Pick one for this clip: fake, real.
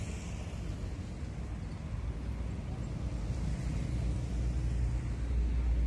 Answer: real